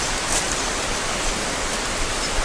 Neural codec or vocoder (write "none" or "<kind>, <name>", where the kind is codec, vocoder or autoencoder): none